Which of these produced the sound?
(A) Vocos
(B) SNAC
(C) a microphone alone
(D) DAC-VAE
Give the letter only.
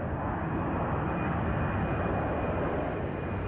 C